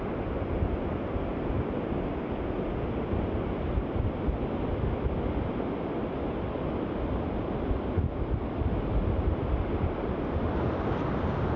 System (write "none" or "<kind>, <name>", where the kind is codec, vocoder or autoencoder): none